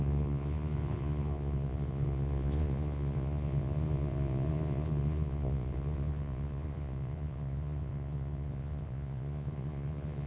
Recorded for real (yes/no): no